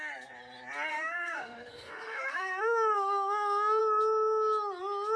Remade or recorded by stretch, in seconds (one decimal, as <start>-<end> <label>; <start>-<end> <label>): 0.0-0.9 recorded; 0.9-3.8 remade; 3.8-5.2 recorded